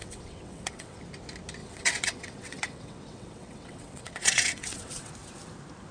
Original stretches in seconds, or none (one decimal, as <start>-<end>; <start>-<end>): 1.0-1.6; 5.1-5.9